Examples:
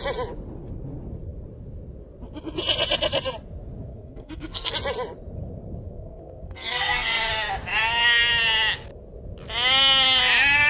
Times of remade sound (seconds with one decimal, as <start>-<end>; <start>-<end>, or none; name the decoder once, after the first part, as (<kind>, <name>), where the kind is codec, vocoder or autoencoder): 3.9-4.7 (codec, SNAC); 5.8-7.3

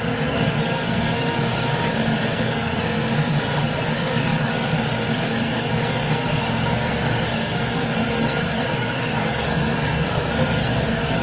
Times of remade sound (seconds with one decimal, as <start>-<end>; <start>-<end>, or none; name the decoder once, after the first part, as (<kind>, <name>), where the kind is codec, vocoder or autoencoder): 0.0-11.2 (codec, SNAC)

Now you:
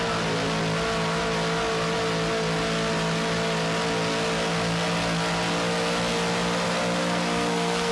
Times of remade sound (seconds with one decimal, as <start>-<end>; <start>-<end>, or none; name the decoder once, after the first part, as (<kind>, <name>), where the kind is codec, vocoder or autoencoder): 7.0-7.9 (codec, SNAC)